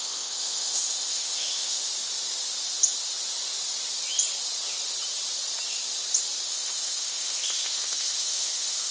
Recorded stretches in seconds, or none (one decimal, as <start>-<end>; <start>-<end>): 1.9-6.5